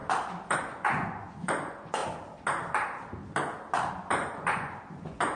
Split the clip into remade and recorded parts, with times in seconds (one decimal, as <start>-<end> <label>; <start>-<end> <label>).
0.0-0.6 recorded; 0.6-2.0 remade; 2.0-3.9 recorded; 3.9-5.4 remade